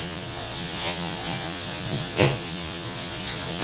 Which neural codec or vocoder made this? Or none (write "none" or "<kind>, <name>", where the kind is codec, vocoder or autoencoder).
vocoder, Vocos